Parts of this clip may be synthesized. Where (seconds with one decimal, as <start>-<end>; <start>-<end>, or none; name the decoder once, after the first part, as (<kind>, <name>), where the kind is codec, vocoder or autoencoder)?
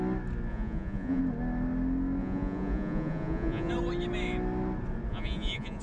0.5-1.2 (vocoder, Vocos); 2.2-3.7; 5.1-5.8